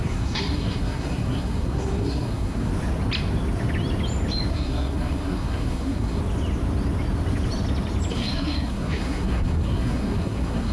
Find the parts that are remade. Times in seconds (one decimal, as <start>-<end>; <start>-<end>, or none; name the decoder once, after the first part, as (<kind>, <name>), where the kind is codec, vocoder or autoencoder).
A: 0.0-2.7 (codec, SNAC); 4.5-6.2; 8.1-10.7